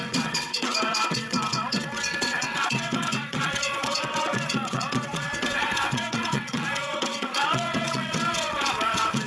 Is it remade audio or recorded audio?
remade